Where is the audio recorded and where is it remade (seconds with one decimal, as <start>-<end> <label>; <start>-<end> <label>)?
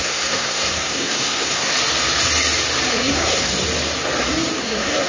0.0-1.7 remade; 1.7-2.9 recorded; 2.9-3.5 remade; 3.5-4.6 recorded; 4.6-5.1 remade